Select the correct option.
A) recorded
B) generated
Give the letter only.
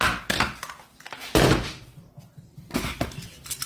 A